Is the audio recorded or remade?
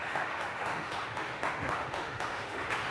remade